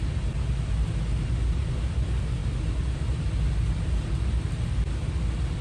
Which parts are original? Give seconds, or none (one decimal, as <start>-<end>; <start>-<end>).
0.0-5.6